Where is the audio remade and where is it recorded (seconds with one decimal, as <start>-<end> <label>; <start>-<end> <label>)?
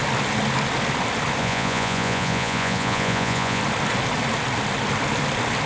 0.0-1.4 recorded; 1.4-3.6 remade; 3.6-5.7 recorded